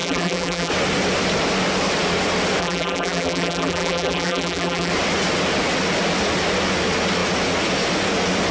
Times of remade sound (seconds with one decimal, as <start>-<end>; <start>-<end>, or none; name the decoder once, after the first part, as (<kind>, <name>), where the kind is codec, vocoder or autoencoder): 0.0-0.7 (vocoder, BigVGAN v2); 2.6-4.9